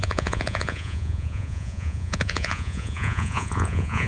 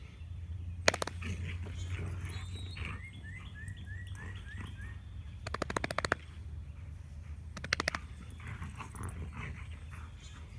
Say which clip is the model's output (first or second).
first